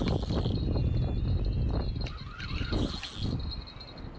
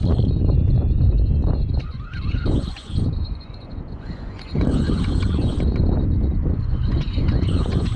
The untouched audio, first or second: first